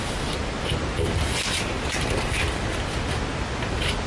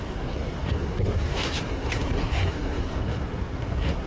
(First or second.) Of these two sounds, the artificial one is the second